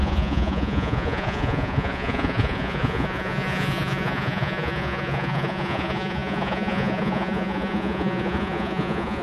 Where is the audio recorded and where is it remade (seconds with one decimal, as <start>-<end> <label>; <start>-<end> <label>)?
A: 0.0-9.2 remade